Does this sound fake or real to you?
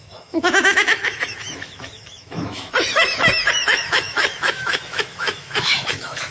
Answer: fake